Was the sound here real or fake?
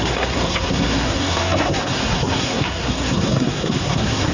fake